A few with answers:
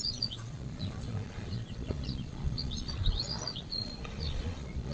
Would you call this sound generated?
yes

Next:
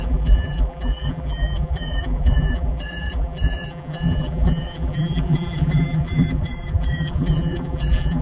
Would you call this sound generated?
yes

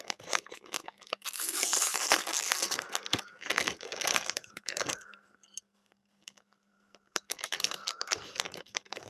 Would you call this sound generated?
yes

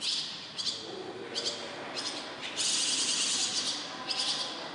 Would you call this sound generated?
no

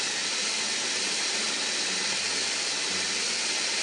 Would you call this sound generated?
yes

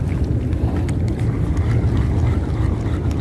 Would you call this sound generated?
no